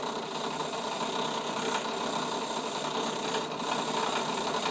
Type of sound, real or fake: real